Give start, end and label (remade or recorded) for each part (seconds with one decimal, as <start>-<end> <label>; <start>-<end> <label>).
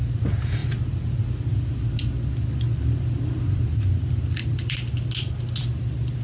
0.0-6.2 recorded